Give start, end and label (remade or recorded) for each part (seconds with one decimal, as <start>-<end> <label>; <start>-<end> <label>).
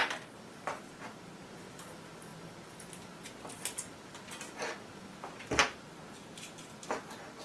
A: 0.0-7.4 recorded